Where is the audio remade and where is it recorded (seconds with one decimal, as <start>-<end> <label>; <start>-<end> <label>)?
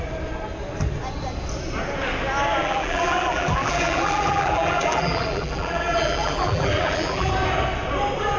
0.0-2.6 recorded; 2.6-7.3 remade; 7.3-8.4 recorded